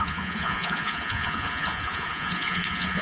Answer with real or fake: fake